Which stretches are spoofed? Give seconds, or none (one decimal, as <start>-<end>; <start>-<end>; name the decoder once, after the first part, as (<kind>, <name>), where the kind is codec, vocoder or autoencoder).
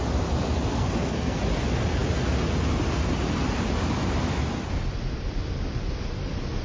0.7-1.4 (codec, SNAC)